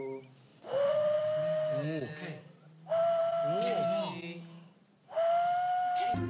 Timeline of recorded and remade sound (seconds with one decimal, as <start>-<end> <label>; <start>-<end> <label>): 0.0-0.5 recorded; 0.5-1.2 remade; 1.2-6.3 recorded